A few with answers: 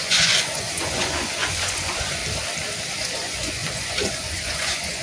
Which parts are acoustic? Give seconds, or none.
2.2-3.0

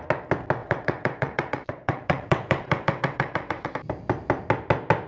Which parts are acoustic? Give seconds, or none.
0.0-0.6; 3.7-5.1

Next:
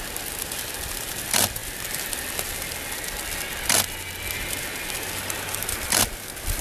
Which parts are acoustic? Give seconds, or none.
0.0-6.6

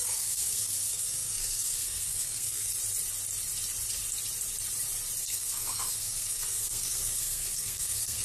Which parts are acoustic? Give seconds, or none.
2.7-5.2

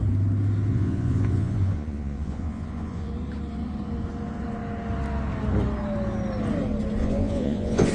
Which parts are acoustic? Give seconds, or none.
0.0-0.7; 3.1-7.0

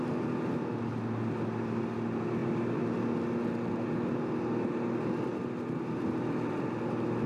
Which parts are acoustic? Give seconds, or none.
0.0-7.3

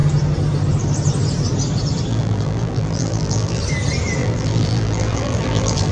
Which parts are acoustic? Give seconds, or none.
0.0-2.1; 3.6-4.2